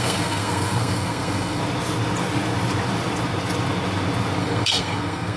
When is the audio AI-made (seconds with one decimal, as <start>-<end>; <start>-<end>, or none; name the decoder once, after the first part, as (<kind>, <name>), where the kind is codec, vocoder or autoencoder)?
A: 0.0-1.6 (codec, SNAC); 4.4-5.4